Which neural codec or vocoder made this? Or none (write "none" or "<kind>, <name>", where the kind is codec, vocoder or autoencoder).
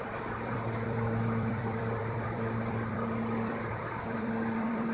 vocoder, BigVGAN v2